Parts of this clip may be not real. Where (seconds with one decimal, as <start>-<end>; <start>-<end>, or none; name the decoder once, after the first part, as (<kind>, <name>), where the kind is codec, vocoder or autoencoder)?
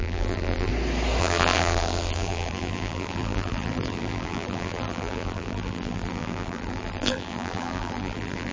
0.0-0.7 (vocoder, BigVGAN v2); 1.2-8.5